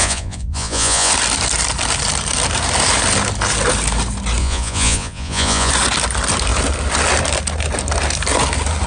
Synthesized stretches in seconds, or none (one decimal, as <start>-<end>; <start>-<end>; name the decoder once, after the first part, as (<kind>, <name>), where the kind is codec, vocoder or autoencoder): 0.0-1.1 (vocoder, Vocos); 4.4-5.7

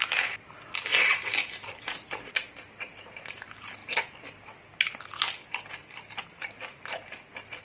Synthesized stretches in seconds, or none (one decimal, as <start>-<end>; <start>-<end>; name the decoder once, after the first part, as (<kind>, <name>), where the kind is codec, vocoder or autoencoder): none

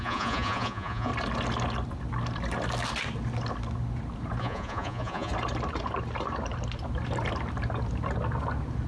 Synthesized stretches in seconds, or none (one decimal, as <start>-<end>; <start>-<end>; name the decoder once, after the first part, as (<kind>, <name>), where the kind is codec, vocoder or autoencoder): 0.0-1.1 (vocoder, Vocos); 4.4-5.3